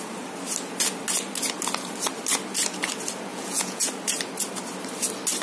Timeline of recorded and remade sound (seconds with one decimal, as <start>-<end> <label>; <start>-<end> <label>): 0.0-3.3 recorded; 3.3-3.9 remade; 3.9-5.4 recorded